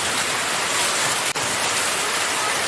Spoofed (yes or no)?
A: no